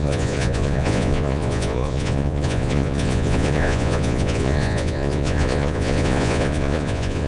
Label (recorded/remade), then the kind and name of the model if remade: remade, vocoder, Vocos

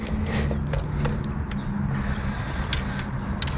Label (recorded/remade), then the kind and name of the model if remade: recorded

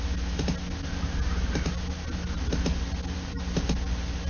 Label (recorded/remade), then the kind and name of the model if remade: recorded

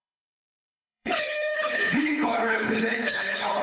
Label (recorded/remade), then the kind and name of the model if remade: remade, codec, HILCodec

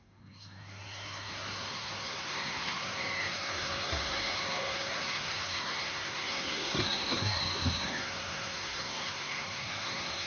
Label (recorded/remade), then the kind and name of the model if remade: remade, codec, SNAC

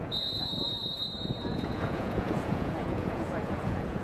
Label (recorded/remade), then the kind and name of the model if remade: remade, vocoder, Vocos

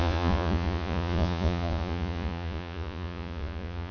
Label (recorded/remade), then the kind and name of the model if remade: remade, vocoder, Vocos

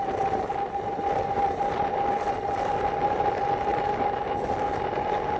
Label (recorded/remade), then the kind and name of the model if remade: recorded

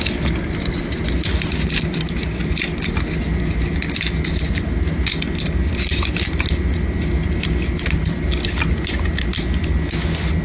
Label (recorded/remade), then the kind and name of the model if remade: recorded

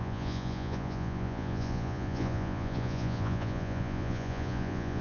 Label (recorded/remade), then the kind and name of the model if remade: remade, vocoder, Vocos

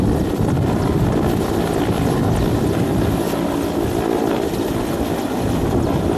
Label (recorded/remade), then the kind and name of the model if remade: recorded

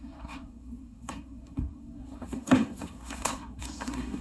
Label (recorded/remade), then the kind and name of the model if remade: remade, codec, SNAC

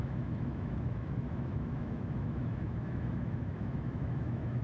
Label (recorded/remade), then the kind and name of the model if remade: remade, autoencoder, DAC-VAE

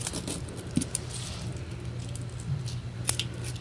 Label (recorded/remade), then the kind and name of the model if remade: recorded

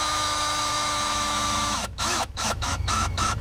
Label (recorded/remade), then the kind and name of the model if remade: remade, autoencoder, DAC-VAE